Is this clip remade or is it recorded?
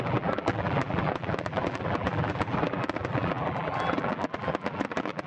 remade